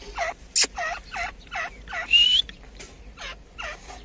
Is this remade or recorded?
recorded